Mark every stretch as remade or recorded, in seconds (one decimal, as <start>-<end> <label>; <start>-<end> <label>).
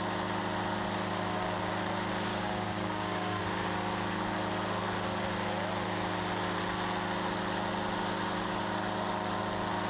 0.0-2.3 recorded; 2.3-3.4 remade; 3.4-9.9 recorded